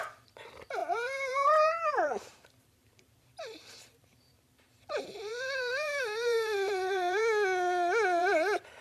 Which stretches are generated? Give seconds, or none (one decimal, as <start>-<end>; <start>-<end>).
0.0-7.2; 8.2-8.8